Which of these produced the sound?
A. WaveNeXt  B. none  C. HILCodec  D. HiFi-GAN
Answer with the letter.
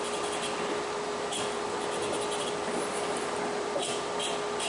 B